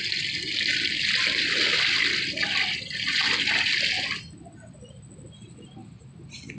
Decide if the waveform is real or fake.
real